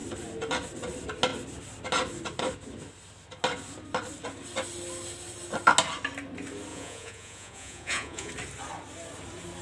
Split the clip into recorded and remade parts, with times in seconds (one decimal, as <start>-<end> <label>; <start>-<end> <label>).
0.0-6.7 recorded; 6.7-8.3 remade; 8.3-9.6 recorded